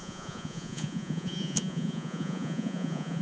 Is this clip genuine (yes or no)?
no